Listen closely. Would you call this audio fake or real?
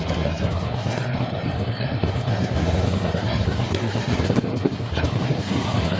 fake